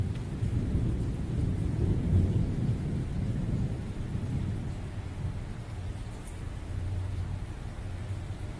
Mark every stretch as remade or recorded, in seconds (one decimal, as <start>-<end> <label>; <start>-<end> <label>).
0.0-1.4 recorded; 1.4-4.1 remade; 4.1-6.2 recorded; 6.2-7.2 remade; 7.2-8.6 recorded

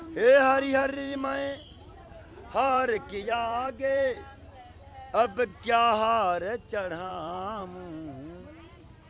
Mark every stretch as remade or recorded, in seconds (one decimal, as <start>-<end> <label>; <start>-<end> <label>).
0.0-5.5 remade; 5.5-7.1 recorded; 7.1-7.6 remade; 7.6-9.1 recorded

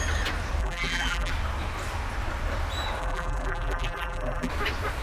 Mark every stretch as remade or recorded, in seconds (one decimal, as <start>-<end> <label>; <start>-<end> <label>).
0.0-0.6 recorded; 0.6-1.3 remade; 1.3-3.0 recorded; 3.0-4.5 remade; 4.5-5.0 recorded

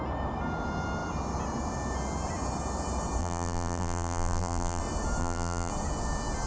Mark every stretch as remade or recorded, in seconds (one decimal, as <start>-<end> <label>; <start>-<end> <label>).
0.0-3.2 recorded; 3.2-4.8 remade; 4.8-5.2 recorded; 5.2-5.7 remade; 5.7-6.5 recorded